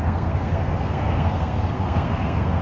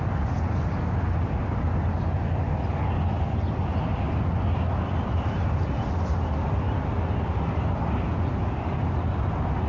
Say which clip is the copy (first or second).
first